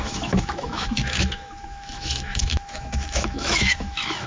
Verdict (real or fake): fake